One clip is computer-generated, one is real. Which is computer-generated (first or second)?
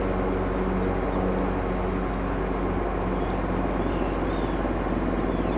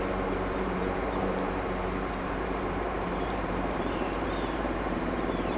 second